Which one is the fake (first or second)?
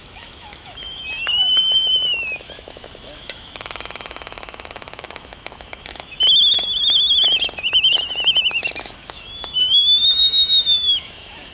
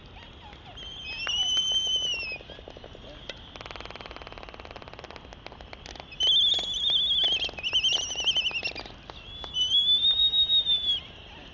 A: first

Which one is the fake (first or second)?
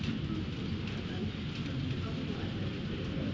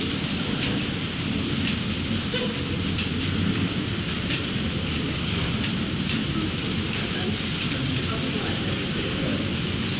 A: second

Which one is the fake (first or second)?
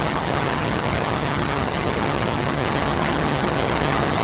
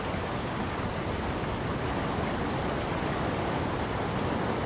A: first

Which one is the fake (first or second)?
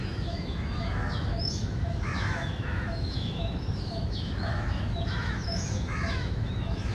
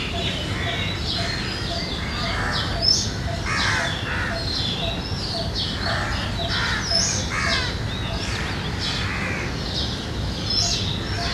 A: first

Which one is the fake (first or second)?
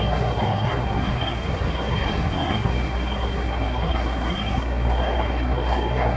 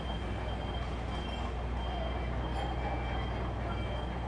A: first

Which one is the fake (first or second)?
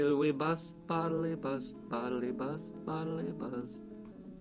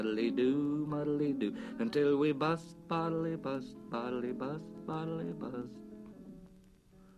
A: first